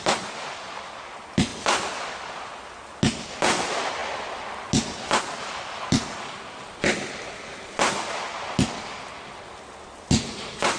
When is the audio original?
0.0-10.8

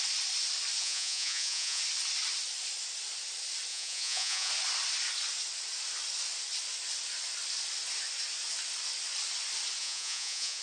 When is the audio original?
0.0-0.8; 1.8-3.7; 4.5-9.8

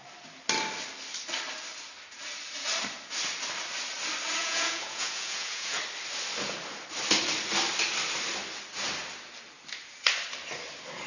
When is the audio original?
0.0-4.4; 5.8-11.1

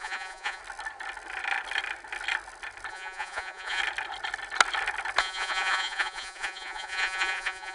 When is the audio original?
0.6-2.9; 3.8-5.2